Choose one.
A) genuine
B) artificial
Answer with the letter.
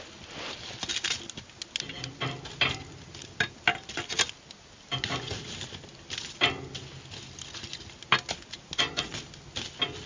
A